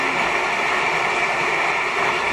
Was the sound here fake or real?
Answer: real